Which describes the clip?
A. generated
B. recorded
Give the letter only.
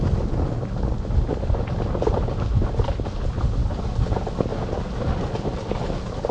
B